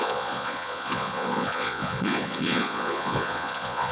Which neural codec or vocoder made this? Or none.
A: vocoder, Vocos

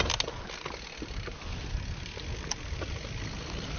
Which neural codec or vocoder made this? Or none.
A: none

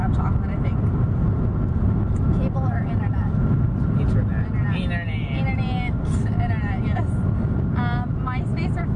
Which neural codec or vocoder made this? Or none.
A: none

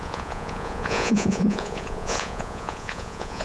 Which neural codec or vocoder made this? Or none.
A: vocoder, Vocos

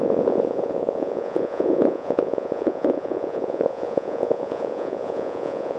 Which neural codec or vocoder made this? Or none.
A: vocoder, Vocos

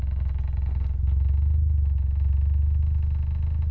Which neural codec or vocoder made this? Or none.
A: none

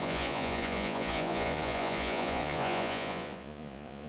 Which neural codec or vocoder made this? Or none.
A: vocoder, Vocos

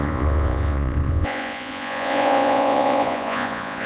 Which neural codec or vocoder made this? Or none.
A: vocoder, Vocos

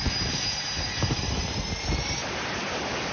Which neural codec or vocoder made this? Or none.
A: none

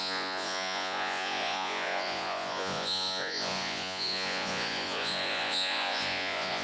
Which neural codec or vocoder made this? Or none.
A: vocoder, Vocos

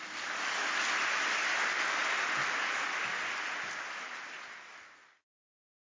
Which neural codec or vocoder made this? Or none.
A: none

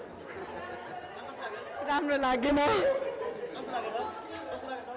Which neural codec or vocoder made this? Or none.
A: none